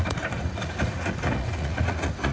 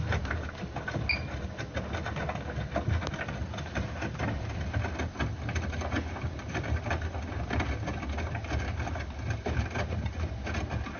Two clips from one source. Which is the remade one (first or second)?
first